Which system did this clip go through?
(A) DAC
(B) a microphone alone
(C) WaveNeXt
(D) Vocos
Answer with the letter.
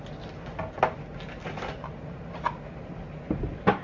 B